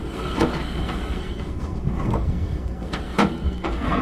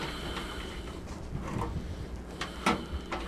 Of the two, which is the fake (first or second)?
first